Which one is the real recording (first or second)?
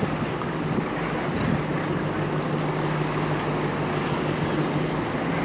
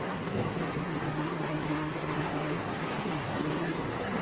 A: first